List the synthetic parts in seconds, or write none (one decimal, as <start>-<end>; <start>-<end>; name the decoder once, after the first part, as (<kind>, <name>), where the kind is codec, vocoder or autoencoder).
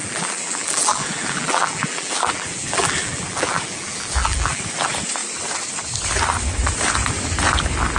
0.0-4.6 (vocoder, BigVGAN v2)